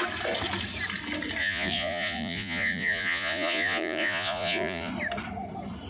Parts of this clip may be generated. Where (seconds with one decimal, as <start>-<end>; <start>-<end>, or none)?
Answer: 1.4-4.9